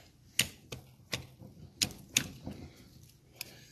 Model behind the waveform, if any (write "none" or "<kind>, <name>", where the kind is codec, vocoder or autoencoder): none